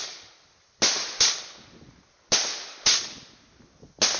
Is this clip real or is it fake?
real